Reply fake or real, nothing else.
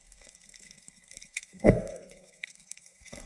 fake